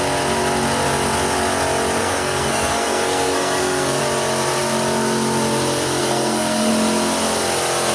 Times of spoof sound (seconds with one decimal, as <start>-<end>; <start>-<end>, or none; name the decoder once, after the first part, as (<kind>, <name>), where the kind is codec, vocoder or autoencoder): 2.0-4.0 (codec, SNAC); 6.0-6.7